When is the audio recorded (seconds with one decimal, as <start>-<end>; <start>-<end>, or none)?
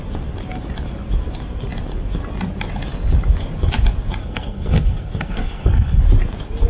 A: 0.0-4.2; 6.0-6.7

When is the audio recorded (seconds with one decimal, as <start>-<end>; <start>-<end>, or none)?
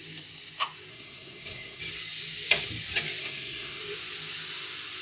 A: 0.0-0.9; 1.8-3.2; 3.8-5.0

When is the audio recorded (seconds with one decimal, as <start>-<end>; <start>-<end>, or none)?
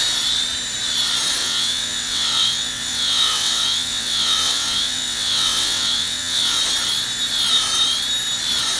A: 0.0-1.4; 6.6-8.8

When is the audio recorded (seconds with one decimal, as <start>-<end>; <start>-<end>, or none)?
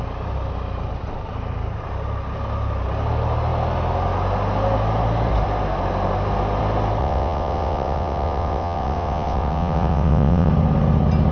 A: 0.0-7.0; 10.5-11.3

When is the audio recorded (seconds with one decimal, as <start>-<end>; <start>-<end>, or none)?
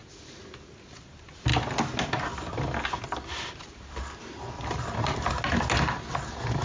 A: 0.0-6.6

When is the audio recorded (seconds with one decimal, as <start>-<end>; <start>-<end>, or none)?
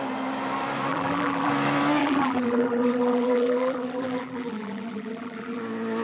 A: 0.0-0.9; 1.5-2.0; 5.6-6.0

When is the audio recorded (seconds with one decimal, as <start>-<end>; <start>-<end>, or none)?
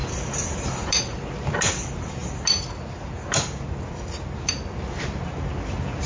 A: 0.0-6.1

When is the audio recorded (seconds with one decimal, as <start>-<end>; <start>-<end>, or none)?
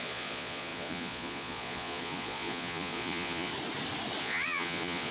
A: 3.5-4.2